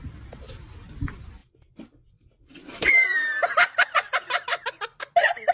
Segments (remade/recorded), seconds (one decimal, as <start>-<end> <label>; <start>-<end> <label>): 0.0-5.5 recorded